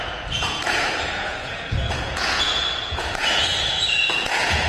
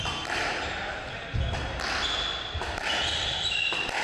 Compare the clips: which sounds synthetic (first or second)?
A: first